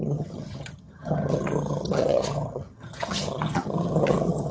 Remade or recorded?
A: remade